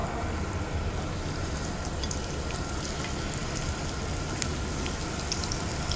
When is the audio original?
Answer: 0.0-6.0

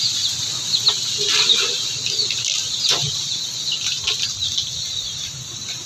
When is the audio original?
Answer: 0.0-5.9

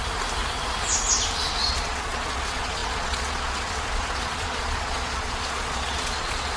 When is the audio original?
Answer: 0.0-1.4

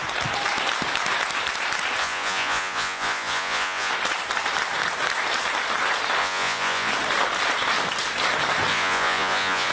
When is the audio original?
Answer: 0.0-2.0; 3.9-6.2; 6.9-8.7

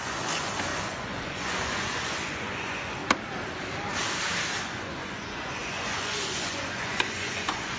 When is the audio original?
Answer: 3.0-4.6